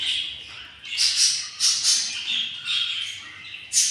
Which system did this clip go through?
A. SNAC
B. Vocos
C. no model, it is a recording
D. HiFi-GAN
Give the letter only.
C